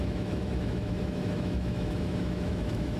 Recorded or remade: remade